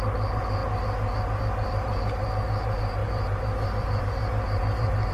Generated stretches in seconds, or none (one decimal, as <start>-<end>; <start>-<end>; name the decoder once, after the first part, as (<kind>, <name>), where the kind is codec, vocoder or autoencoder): 0.0-0.6 (vocoder, BigVGAN v2); 1.4-5.1

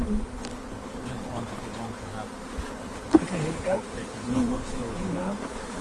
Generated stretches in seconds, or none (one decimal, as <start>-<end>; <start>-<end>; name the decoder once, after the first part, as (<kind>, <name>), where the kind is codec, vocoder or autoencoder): 0.0-2.1 (codec, HILCodec); 2.7-5.8

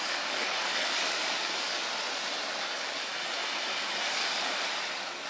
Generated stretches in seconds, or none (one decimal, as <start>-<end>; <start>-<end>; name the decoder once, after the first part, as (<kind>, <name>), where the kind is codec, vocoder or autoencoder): 0.0-1.8 (codec, DAC); 2.6-3.1; 3.7-4.2

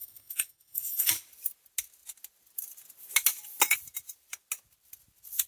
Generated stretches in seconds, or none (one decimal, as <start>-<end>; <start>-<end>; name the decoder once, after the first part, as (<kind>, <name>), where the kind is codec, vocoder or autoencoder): 0.0-1.1 (codec, SNAC)

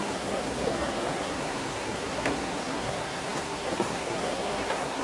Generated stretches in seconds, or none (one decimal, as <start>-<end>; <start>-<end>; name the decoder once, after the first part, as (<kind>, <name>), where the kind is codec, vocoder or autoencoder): 0.0-5.0 (codec, SNAC)

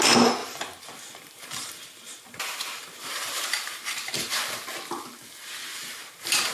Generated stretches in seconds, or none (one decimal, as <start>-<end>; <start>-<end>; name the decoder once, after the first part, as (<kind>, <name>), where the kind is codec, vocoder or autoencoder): 0.4-4.3 (vocoder, BigVGAN v2); 5.7-6.5

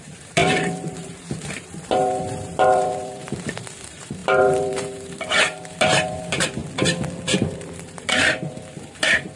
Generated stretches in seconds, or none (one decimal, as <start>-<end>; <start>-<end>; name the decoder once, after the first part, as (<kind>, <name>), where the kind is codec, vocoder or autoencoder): 0.0-6.6 (vocoder, BigVGAN v2); 7.2-9.4